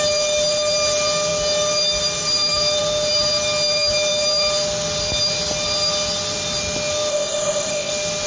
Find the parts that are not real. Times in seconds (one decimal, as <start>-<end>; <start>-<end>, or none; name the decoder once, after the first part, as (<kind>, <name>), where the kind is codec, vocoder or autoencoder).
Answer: 7.1-7.9 (codec, ZipCodec)